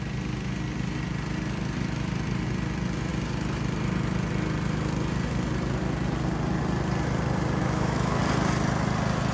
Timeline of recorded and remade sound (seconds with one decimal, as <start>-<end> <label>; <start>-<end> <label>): 0.0-7.6 recorded; 7.6-8.2 remade; 8.2-9.3 recorded